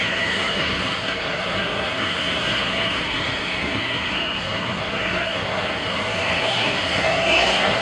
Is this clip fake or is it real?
fake